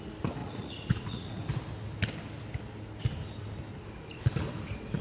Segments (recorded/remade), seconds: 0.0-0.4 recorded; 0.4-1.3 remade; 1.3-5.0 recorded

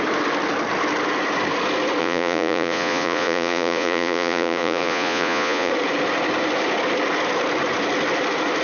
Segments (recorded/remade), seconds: 0.0-2.0 recorded; 2.0-5.7 remade; 5.7-8.6 recorded

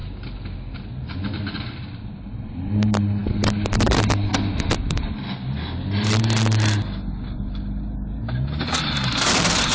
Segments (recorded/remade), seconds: 0.0-9.7 recorded